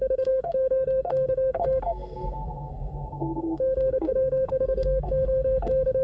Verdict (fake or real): fake